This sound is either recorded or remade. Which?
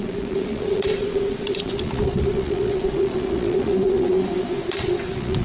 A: remade